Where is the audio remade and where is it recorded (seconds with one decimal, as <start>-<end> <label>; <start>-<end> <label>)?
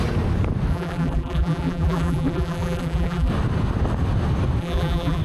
0.0-0.7 recorded; 0.7-3.3 remade; 3.3-4.6 recorded; 4.6-5.2 remade